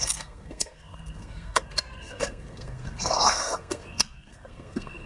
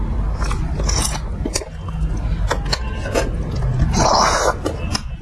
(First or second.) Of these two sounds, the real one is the second